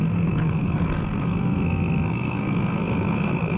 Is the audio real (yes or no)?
no